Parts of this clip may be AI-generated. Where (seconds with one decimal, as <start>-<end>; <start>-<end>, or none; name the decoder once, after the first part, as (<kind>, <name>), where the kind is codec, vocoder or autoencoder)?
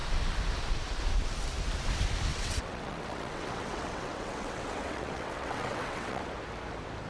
2.3-6.2 (vocoder, WaveNeXt)